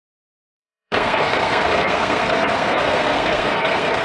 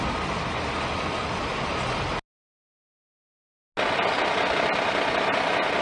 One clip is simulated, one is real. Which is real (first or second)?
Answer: second